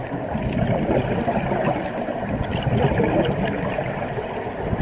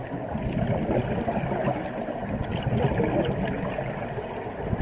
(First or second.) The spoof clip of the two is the first